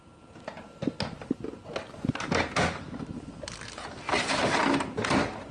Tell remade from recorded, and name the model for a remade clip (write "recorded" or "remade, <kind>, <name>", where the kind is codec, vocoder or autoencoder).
recorded